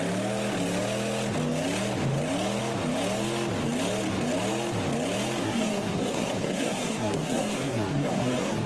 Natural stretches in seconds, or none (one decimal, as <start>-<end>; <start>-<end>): 0.0-5.4